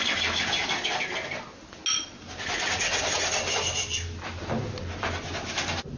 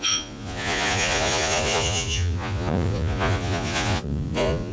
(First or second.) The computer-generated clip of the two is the second